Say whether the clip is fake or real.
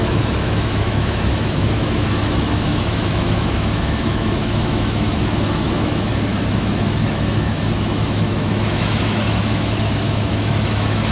fake